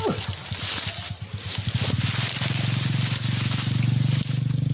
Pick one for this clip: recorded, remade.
recorded